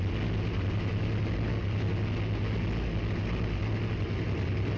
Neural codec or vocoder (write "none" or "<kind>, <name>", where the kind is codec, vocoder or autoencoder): none